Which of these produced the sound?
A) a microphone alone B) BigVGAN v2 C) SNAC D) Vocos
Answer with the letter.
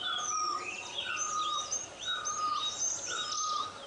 A